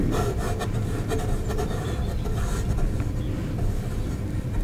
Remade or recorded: recorded